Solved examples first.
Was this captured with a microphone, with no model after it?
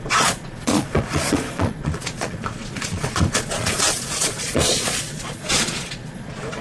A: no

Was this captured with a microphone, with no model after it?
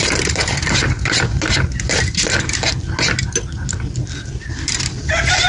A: yes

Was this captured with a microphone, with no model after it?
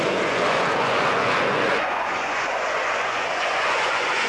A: no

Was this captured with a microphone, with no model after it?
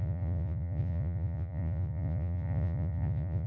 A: no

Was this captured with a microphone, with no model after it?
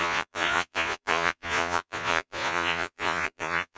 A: no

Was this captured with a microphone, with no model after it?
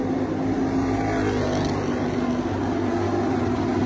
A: yes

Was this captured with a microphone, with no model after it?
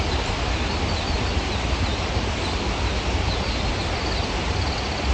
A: yes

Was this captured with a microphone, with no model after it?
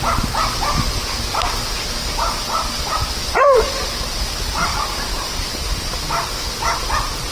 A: yes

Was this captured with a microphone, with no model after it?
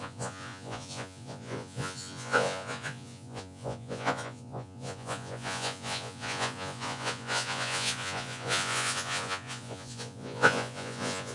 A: no